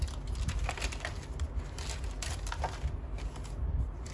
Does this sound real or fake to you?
real